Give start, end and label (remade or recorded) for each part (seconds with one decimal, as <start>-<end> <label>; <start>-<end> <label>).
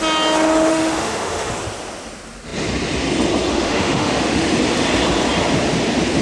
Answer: 0.0-0.7 recorded; 0.7-1.5 remade; 1.5-3.5 recorded; 3.5-4.5 remade; 4.5-6.2 recorded